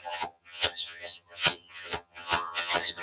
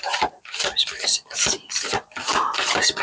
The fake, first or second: first